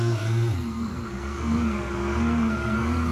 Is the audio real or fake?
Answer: fake